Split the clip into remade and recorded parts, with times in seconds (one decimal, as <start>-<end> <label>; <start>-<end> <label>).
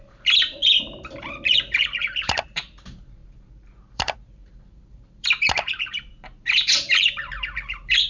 0.0-0.6 remade; 0.6-1.2 recorded; 1.2-8.1 remade